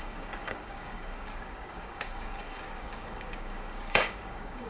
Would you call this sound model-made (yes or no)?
yes